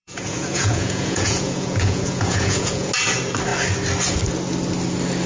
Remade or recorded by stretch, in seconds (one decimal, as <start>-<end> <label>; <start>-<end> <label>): 0.0-2.9 remade; 2.9-5.3 recorded